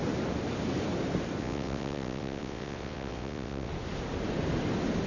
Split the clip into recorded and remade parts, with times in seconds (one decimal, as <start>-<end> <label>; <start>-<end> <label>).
0.0-1.4 recorded; 1.4-3.7 remade; 3.7-5.1 recorded